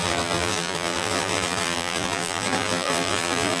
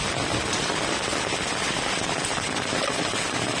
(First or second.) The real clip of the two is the second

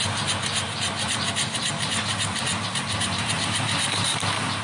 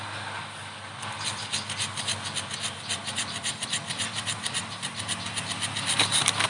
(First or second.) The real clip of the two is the second